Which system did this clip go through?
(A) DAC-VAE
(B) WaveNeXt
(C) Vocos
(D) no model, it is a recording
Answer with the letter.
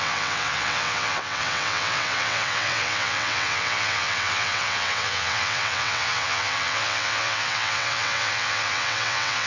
B